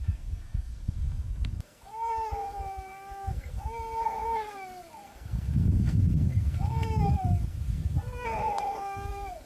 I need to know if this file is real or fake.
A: fake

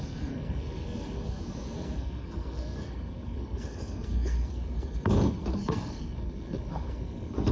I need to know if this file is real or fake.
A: fake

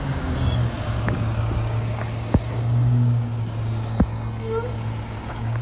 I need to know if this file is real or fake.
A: fake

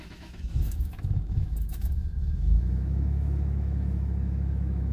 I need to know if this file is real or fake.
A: fake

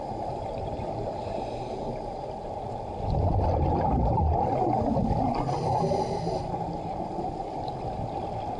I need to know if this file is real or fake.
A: real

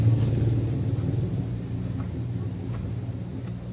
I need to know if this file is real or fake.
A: real